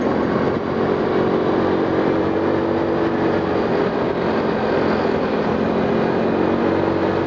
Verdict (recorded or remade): recorded